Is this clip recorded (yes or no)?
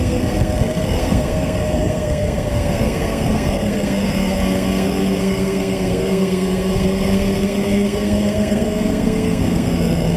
no